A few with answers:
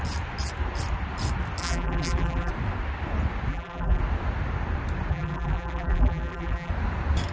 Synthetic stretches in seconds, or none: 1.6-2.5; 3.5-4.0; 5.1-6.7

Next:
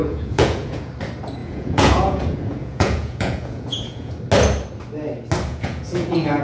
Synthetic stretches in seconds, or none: 0.0-0.9; 1.4-4.1; 5.5-6.4

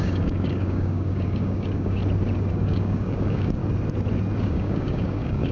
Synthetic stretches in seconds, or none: 0.0-2.0; 2.5-3.6; 4.4-5.5